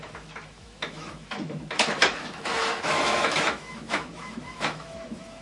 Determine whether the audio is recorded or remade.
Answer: remade